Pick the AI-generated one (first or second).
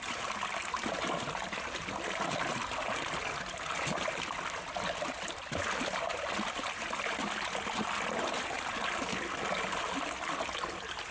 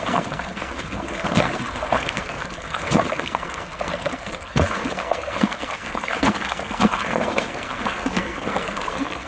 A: second